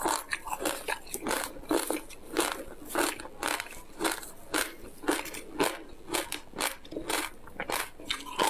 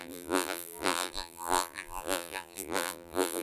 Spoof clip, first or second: second